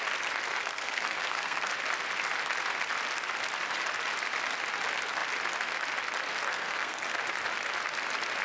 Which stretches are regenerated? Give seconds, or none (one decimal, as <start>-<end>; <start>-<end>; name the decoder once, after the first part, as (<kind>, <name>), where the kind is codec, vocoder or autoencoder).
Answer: 0.5-1.7 (codec, SNAC); 6.5-7.2